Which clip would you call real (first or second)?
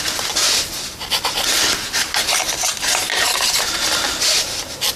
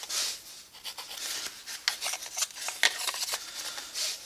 second